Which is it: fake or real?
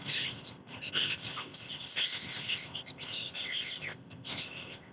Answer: fake